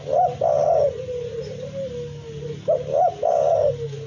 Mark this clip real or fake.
real